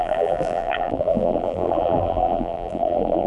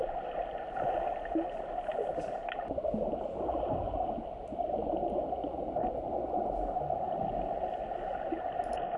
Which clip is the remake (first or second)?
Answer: first